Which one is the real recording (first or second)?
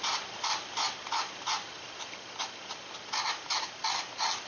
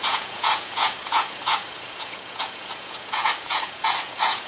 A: first